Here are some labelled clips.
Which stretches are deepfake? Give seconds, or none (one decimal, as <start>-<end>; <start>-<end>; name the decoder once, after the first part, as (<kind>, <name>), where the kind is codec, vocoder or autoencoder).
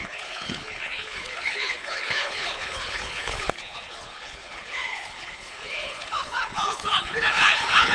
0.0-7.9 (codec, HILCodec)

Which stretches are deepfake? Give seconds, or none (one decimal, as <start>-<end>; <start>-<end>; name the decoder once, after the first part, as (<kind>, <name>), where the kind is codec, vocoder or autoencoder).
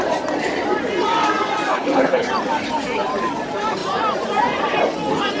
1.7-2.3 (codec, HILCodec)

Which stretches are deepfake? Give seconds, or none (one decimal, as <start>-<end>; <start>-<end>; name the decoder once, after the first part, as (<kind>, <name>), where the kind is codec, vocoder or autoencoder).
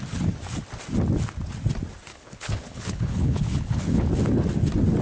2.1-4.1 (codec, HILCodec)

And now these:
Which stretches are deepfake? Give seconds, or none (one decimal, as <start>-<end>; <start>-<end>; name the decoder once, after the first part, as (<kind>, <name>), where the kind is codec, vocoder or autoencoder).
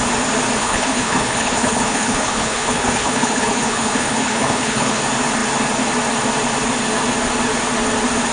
0.6-5.0 (codec, HILCodec)